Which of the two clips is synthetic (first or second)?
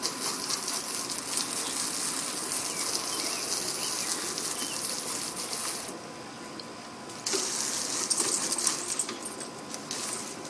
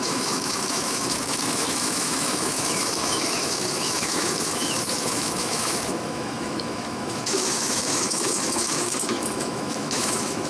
second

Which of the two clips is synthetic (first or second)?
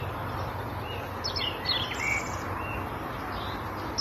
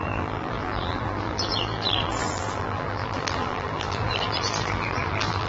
second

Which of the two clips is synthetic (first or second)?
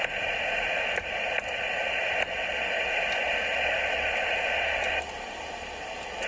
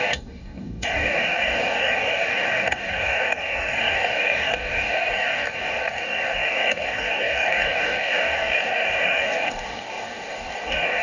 second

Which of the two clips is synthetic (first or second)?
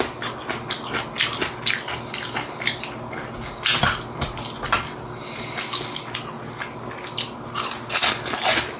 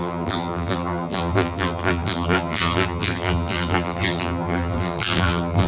second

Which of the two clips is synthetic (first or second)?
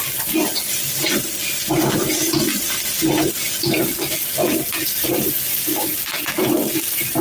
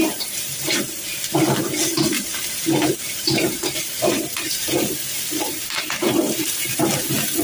second